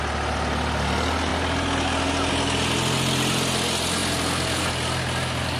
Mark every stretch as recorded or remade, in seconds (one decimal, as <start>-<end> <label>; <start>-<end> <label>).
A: 0.0-5.6 recorded